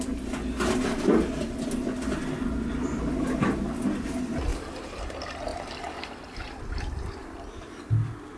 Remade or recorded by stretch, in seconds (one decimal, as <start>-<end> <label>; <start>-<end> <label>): 0.0-4.5 recorded; 4.5-5.0 remade; 5.0-5.5 recorded; 5.5-7.7 remade; 7.7-8.4 recorded